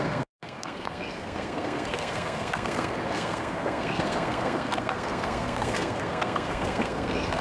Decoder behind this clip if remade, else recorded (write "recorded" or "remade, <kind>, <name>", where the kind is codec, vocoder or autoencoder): remade, codec, SNAC